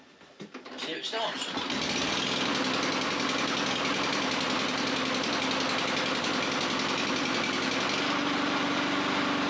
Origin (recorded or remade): recorded